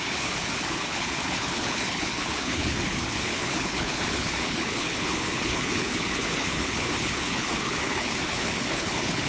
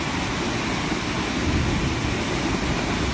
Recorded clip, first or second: second